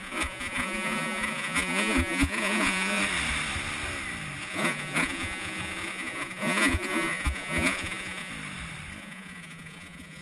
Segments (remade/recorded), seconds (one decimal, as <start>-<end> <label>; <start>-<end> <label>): 0.0-3.0 remade; 3.0-4.4 recorded; 4.4-8.3 remade; 8.3-9.0 recorded; 9.0-10.2 remade